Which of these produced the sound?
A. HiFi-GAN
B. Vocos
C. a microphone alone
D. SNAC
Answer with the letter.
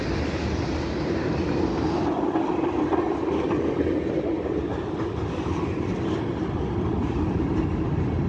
C